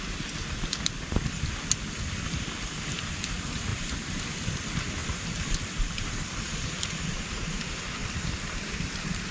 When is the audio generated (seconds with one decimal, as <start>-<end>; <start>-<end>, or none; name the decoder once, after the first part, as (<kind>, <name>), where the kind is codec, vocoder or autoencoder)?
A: 3.7-4.2 (vocoder, BigVGAN v2); 5.0-6.1; 8.0-9.3

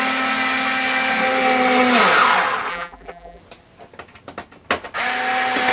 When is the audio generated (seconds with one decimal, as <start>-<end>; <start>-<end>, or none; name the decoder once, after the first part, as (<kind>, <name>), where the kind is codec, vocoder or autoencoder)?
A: 2.7-3.4 (vocoder, BigVGAN v2)

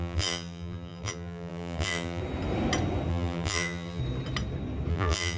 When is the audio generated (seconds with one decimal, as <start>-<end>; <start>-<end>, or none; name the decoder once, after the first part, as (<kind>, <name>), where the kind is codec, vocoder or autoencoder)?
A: 0.0-2.2 (vocoder, BigVGAN v2); 3.1-4.0; 4.9-5.4

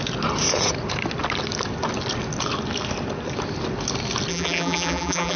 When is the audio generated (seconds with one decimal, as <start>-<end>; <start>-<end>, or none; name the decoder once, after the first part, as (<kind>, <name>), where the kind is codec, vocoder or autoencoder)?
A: 4.3-5.4 (vocoder, BigVGAN v2)

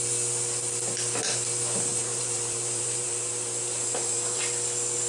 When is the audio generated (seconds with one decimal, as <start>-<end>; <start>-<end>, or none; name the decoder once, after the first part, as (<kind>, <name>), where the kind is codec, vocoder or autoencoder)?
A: 1.9-4.4 (vocoder, BigVGAN v2)